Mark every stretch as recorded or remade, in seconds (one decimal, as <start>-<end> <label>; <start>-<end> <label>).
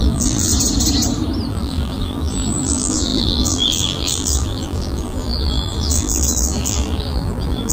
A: 0.0-0.5 remade; 0.5-1.5 recorded; 1.5-7.7 remade